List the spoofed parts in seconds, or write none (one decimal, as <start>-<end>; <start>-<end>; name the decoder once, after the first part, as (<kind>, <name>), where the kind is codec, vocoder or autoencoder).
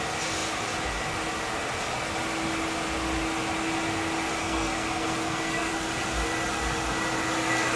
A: 4.4-5.7 (codec, SNAC)